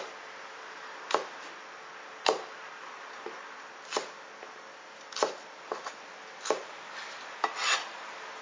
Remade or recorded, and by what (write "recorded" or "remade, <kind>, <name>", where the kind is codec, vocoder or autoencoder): recorded